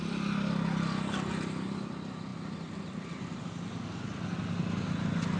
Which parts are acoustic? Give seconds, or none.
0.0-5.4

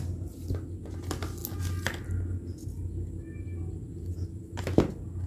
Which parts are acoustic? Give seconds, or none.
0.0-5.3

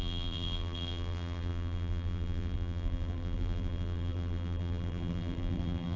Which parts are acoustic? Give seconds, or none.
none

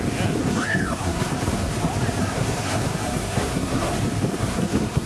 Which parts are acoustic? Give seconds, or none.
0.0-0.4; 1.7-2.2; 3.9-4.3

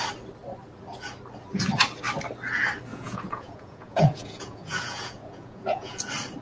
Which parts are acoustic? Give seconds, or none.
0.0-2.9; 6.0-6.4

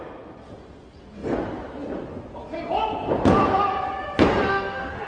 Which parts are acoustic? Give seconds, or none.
0.0-4.5